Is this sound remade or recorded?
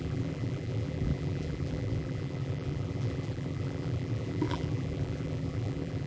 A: remade